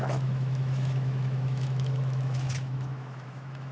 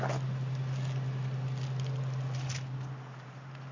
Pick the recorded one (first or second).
second